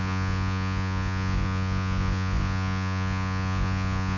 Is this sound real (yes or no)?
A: no